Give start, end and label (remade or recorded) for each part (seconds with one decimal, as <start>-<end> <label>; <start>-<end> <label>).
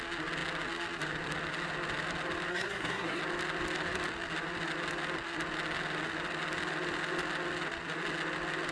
0.0-2.5 recorded; 2.5-3.2 remade; 3.2-8.7 recorded